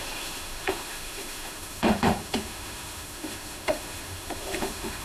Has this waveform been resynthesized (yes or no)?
yes